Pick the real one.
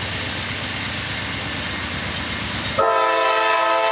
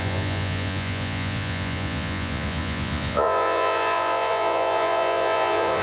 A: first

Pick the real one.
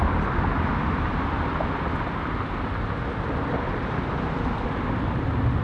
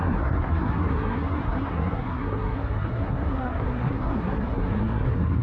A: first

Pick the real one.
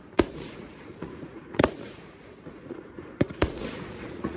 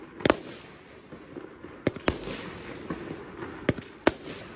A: second